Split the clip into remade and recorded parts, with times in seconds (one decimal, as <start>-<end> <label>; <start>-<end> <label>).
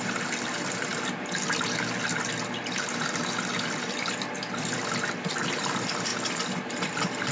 0.0-0.9 remade; 0.9-5.2 recorded; 5.2-6.1 remade; 6.1-6.7 recorded; 6.7-7.3 remade